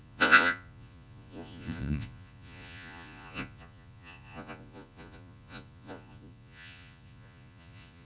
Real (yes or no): no